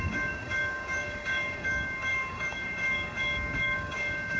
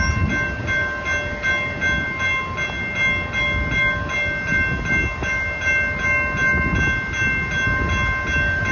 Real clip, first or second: second